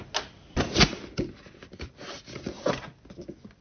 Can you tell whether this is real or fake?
real